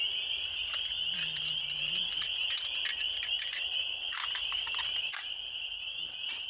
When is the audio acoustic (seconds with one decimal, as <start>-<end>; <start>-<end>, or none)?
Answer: 0.0-3.0; 5.7-6.5